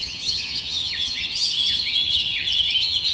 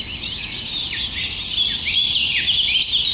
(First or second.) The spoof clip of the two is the first